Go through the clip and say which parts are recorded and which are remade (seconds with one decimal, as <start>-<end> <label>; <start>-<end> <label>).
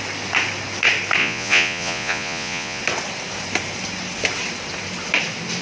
0.0-1.2 recorded; 1.2-2.8 remade; 2.8-5.6 recorded